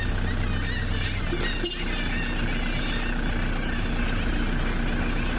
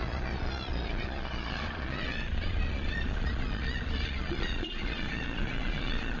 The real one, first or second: first